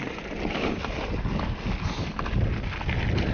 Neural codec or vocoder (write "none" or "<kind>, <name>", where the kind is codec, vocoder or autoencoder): none